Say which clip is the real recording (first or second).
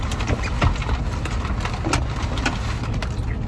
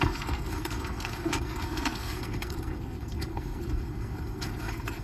first